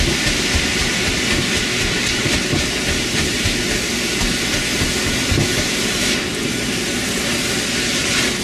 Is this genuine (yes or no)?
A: yes